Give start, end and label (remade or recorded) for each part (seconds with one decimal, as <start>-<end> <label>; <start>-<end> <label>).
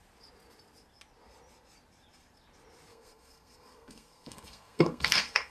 0.0-2.9 recorded; 2.9-5.5 remade